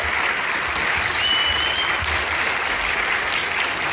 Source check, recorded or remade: recorded